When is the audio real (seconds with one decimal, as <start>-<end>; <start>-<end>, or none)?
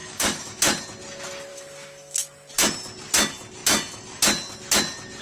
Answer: 0.6-1.5; 2.5-5.2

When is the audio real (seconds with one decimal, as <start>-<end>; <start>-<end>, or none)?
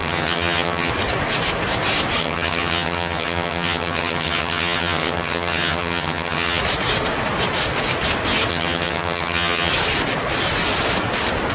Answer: 0.9-2.2; 6.6-8.5; 9.7-11.5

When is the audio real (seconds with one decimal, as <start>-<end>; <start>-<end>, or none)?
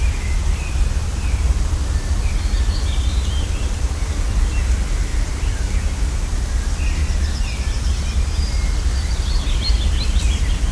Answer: 0.0-5.1; 5.7-7.0; 8.4-10.7